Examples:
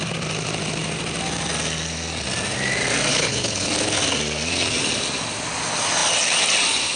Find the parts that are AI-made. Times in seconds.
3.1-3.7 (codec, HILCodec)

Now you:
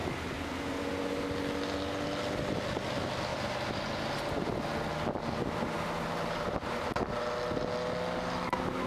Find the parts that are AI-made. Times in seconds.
3.3-3.8 (vocoder, BigVGAN v2)

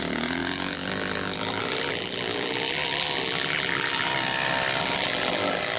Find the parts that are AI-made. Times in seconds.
0.0-4.1 (vocoder, BigVGAN v2); 4.8-5.8

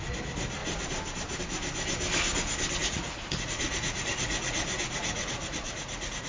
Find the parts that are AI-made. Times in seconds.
2.8-6.3 (vocoder, Vocos)

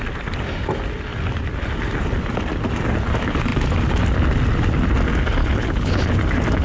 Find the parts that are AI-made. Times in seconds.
5.4-6.0 (codec, HILCodec)

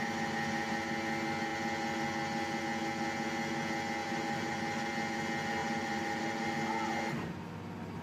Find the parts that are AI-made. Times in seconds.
4.0-4.9 (vocoder, BigVGAN v2); 5.6-6.5

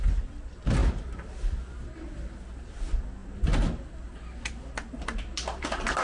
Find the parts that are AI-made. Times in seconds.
none